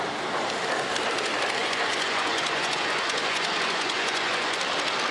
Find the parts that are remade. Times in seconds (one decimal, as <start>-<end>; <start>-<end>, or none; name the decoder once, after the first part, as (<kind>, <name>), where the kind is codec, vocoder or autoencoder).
1.6-4.6 (vocoder, Vocos)